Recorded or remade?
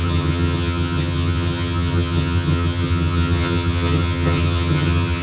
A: remade